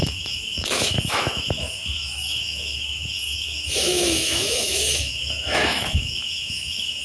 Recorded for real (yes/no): no